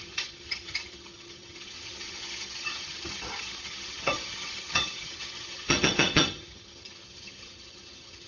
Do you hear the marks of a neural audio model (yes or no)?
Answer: yes